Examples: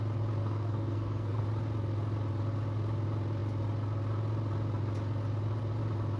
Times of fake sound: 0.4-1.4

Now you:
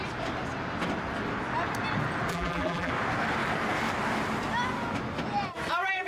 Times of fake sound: 2.3-2.9

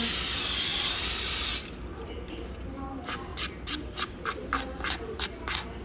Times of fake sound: 0.7-1.5; 1.9-2.5; 3.3-4.4

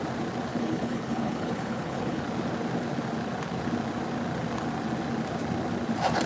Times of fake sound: 0.5-2.2

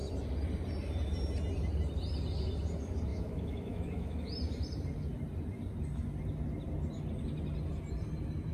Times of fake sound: 3.1-4.3

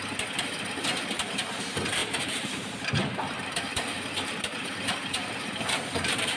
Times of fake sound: 0.0-6.4

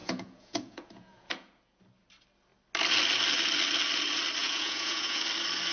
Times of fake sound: 0.0-1.8; 4.4-5.2